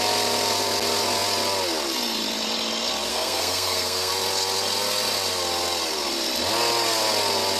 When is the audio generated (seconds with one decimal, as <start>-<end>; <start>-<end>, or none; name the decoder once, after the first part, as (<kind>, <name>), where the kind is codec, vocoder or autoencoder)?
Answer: 3.1-4.1 (codec, SNAC)